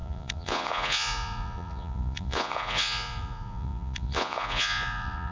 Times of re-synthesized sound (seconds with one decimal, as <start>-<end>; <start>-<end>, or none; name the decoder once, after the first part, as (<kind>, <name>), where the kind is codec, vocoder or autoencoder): 0.0-5.3 (vocoder, Vocos)